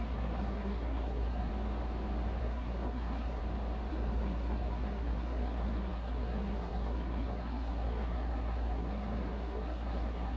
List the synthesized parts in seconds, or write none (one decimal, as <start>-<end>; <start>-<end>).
0.0-1.5; 2.4-3.4; 3.9-10.4